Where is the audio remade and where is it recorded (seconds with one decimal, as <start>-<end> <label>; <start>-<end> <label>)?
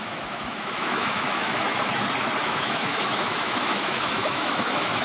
0.0-1.9 remade; 1.9-2.4 recorded; 2.4-5.0 remade